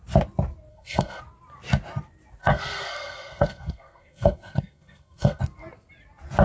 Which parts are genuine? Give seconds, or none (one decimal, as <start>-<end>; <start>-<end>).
0.0-0.7; 1.2-2.4; 5.4-6.4